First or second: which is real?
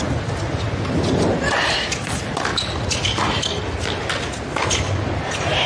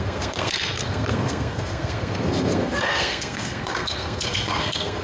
first